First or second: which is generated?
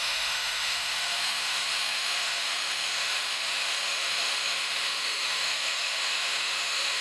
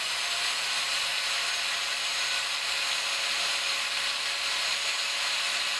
first